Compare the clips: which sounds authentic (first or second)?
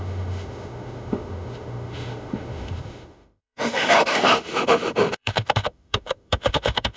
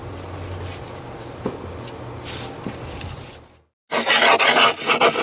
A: second